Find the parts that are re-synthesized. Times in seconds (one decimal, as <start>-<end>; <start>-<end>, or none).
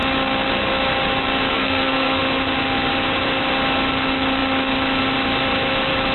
1.5-2.2